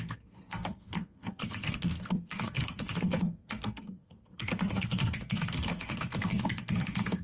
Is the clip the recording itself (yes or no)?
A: no